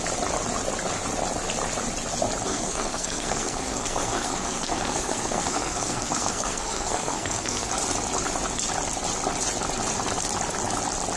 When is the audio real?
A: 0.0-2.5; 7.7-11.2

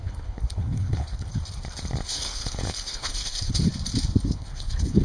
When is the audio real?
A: 1.3-2.1; 3.7-4.3

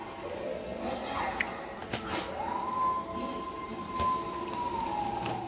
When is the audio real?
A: 0.0-5.5

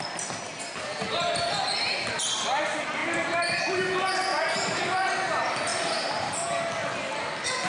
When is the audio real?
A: 0.0-4.3; 4.8-5.7; 6.3-7.7